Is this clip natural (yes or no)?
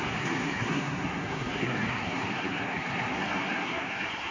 no